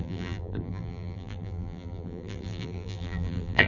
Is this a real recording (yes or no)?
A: no